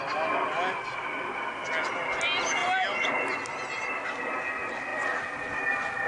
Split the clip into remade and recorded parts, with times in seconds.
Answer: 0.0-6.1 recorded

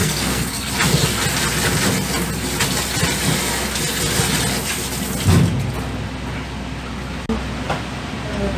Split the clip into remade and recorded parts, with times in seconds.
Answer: 0.0-0.7 remade; 0.7-8.6 recorded

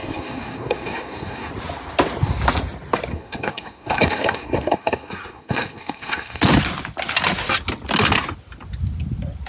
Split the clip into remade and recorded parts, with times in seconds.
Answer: 0.0-1.5 remade; 1.5-3.1 recorded; 3.1-6.4 remade; 6.4-9.5 recorded